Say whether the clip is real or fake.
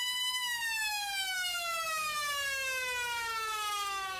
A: fake